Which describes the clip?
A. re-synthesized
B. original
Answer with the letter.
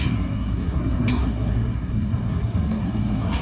A